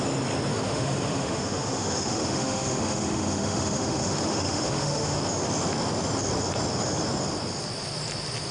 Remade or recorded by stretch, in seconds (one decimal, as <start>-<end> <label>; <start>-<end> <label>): 0.0-0.5 recorded; 0.5-5.2 remade; 5.2-8.5 recorded